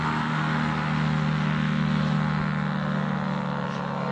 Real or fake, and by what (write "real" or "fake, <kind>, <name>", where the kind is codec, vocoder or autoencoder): real